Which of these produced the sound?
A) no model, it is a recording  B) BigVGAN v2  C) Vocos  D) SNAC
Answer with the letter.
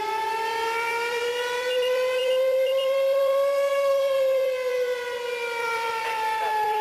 B